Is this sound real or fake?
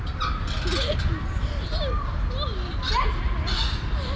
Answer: real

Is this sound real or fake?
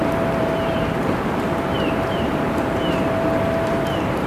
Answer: fake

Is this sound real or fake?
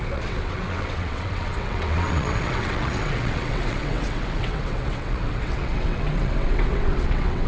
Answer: fake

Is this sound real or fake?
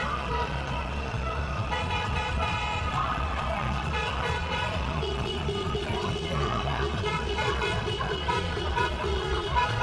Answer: fake